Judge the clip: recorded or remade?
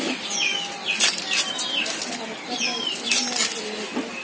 recorded